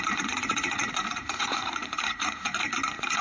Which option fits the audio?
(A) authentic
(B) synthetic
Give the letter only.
B